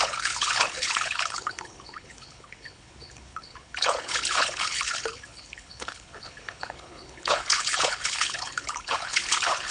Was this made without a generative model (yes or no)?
no